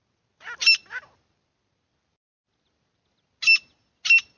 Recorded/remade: recorded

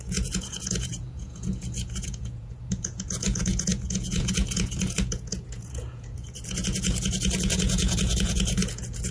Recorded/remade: remade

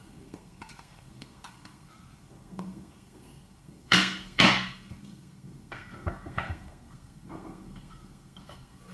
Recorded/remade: remade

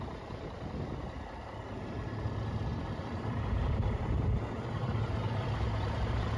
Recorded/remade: recorded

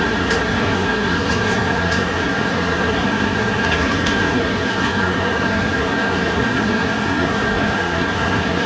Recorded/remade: remade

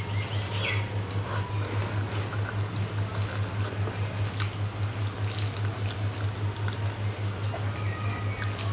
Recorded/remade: recorded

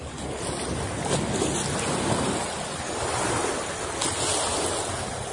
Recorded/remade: recorded